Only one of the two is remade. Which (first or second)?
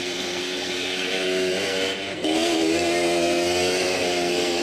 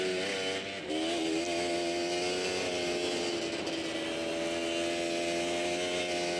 first